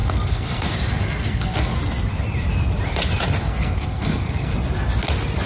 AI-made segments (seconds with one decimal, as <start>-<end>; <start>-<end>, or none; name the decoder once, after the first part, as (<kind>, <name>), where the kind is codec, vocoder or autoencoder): 0.0-1.7 (codec, SNAC); 3.4-4.5